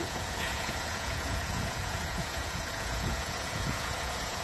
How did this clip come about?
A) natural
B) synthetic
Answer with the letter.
B